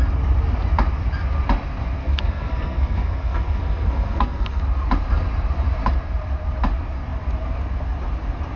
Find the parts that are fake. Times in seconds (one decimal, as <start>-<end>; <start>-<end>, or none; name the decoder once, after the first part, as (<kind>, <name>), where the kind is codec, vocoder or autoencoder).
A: 2.0-4.6 (codec, SNAC)